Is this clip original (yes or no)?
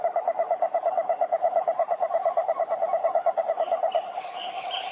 yes